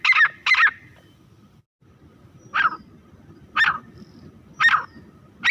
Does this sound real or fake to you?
real